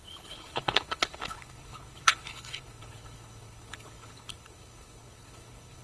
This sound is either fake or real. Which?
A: fake